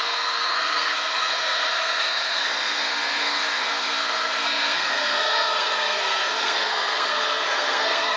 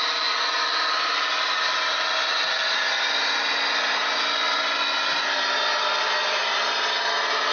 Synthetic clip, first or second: first